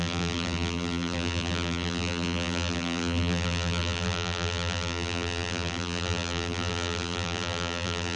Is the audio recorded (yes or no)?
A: no